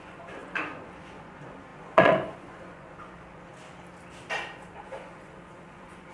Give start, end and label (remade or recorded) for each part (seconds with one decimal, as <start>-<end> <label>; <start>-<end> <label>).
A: 0.0-3.5 remade; 3.5-4.4 recorded; 4.4-6.1 remade